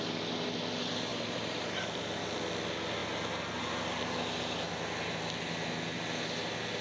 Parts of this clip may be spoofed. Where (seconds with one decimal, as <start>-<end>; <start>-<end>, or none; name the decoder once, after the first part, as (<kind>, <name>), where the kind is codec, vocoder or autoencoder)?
1.1-2.2 (vocoder, BigVGAN v2)